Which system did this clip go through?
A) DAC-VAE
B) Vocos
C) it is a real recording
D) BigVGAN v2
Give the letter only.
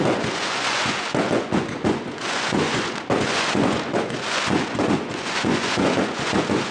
B